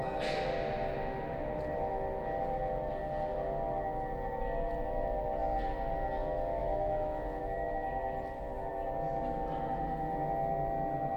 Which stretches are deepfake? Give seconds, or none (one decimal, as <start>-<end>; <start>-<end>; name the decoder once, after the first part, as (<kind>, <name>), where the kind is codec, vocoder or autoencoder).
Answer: 6.6-7.4 (autoencoder, DAC-VAE)